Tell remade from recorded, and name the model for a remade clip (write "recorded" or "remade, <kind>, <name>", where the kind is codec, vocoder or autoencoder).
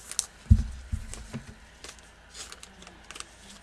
recorded